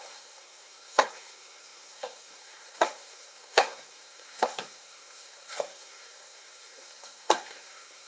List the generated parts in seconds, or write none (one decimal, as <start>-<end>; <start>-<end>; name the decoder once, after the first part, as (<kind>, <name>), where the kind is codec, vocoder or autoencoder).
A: 0.0-8.1 (codec, SNAC)

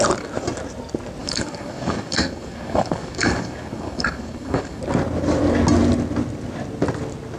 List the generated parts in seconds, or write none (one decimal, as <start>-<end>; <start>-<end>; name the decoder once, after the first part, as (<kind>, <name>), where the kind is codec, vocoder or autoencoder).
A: 1.2-4.8 (codec, DAC)

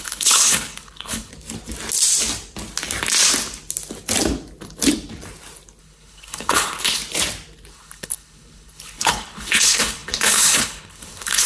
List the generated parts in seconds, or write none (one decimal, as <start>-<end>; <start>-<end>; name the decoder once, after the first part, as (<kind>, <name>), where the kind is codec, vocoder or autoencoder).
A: 0.0-1.3 (codec, HILCodec); 5.8-7.0; 7.7-11.5

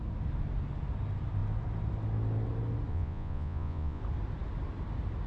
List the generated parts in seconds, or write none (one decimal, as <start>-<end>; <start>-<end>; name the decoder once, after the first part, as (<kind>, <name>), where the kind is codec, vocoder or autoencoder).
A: 2.9-4.0 (vocoder, Vocos)

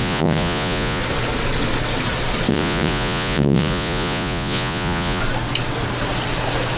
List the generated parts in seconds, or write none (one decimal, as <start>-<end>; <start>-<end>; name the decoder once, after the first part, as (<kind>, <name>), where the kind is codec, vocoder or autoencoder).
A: 0.0-1.0 (vocoder, Vocos); 2.5-5.2